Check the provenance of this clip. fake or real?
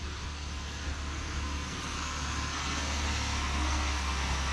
fake